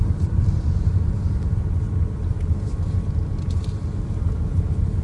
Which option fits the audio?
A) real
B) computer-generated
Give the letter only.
A